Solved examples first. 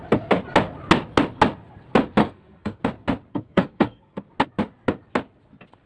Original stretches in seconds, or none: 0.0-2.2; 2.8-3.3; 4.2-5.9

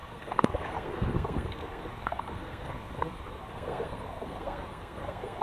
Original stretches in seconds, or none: none

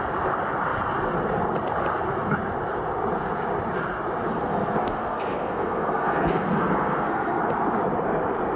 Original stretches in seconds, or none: 0.0-4.3; 7.4-8.6

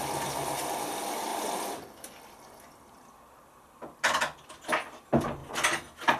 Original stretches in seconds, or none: 0.0-6.2

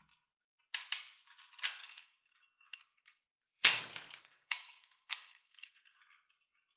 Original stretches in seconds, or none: 0.0-1.8; 3.8-4.2; 6.0-6.8

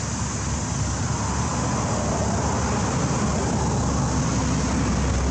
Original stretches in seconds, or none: 0.0-5.3

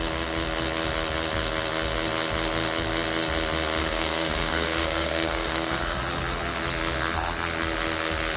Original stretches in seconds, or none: 0.0-3.8; 6.0-8.4

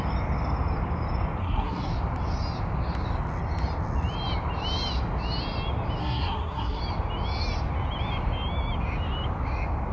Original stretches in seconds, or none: 0.0-1.4; 1.9-6.0; 6.8-9.9